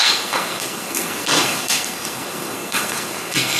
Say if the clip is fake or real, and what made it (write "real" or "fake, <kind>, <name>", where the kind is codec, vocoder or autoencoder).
fake, codec, SNAC